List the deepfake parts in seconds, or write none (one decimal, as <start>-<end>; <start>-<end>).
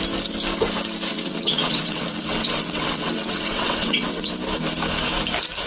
1.1-4.3